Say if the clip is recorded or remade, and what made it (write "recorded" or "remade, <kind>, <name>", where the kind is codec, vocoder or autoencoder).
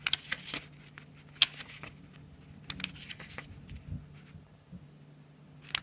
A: recorded